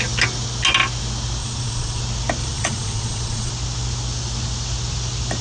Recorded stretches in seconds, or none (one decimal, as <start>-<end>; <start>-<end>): 0.0-1.4; 2.0-2.4; 3.5-5.4